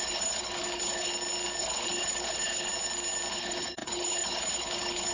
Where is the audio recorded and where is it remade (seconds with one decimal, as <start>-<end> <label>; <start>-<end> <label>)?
0.0-1.1 remade; 1.1-1.6 recorded; 1.6-2.7 remade; 2.7-3.3 recorded; 3.3-5.1 remade